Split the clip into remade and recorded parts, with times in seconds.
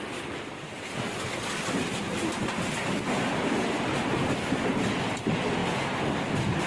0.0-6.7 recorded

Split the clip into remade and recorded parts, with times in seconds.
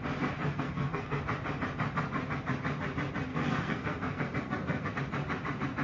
0.0-0.4 recorded; 0.4-1.2 remade; 1.2-3.3 recorded; 3.3-4.9 remade; 4.9-5.8 recorded